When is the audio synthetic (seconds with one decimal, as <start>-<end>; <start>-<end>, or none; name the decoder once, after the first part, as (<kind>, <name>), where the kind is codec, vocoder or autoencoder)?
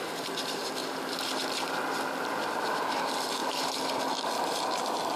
0.8-2.9 (vocoder, BigVGAN v2); 3.4-4.6